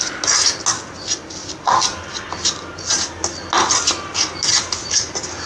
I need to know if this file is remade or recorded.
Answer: recorded